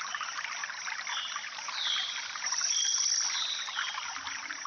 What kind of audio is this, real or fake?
real